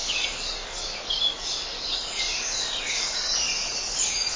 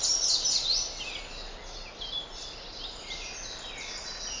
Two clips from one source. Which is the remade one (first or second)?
first